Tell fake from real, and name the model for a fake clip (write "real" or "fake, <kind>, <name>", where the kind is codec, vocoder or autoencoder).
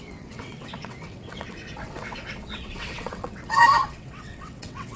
fake, vocoder, WaveNeXt